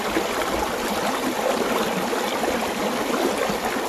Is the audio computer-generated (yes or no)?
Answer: no